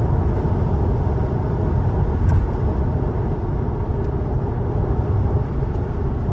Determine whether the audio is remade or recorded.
recorded